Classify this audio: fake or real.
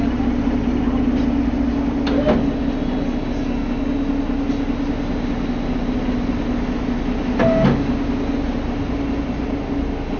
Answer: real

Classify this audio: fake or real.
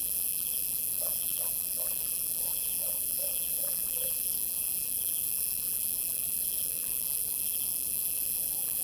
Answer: fake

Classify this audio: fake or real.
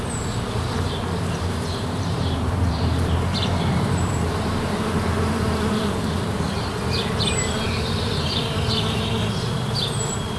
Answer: fake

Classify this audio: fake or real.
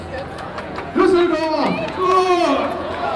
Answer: fake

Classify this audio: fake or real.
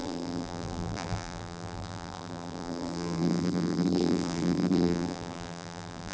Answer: fake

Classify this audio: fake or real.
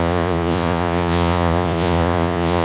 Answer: fake